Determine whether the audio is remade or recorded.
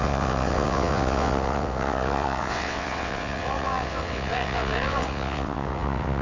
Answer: remade